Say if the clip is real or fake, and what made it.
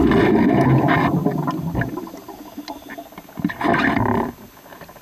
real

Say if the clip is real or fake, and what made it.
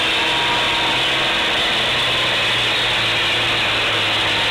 real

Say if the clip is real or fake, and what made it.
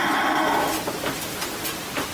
real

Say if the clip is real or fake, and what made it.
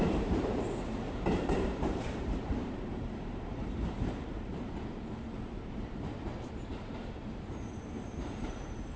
fake, vocoder, BigVGAN v2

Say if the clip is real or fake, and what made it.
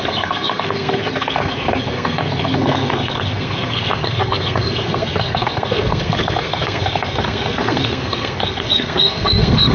fake, codec, SNAC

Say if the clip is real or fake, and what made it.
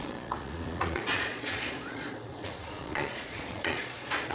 fake, vocoder, Vocos